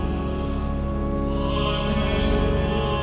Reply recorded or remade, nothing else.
recorded